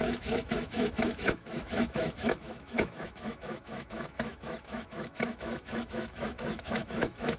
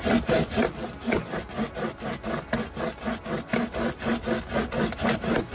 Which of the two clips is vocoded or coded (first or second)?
first